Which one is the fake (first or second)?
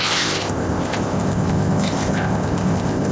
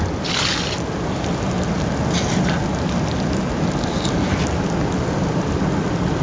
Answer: first